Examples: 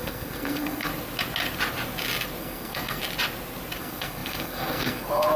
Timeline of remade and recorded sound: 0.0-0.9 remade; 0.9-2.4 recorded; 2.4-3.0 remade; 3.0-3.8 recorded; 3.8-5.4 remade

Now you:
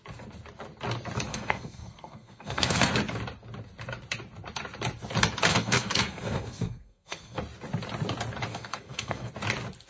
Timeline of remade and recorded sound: 0.0-1.3 recorded; 1.3-2.9 remade; 2.9-5.5 recorded; 5.5-7.4 remade; 7.4-8.5 recorded; 8.5-9.3 remade; 9.3-9.9 recorded

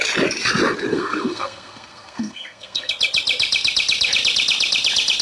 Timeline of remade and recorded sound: 0.0-0.9 recorded; 0.9-2.9 remade; 2.9-5.2 recorded

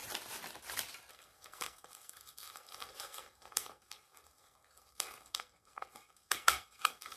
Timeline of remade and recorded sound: 0.0-1.1 recorded; 1.1-7.2 remade

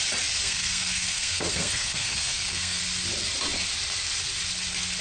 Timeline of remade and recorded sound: 0.0-0.4 recorded; 0.4-2.8 remade; 2.8-5.0 recorded